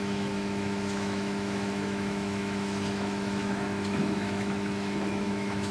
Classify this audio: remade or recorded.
remade